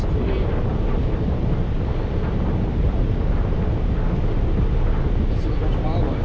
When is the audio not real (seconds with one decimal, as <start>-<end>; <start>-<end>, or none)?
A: 0.7-3.9